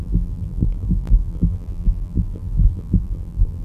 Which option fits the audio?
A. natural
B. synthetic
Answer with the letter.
B